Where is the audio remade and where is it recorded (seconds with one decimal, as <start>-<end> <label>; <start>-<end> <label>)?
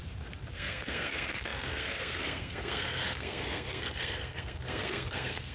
0.0-0.5 recorded; 0.5-5.5 remade